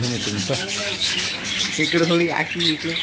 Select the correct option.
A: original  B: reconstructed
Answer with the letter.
B